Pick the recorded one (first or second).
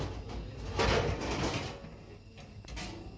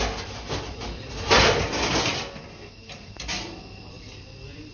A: first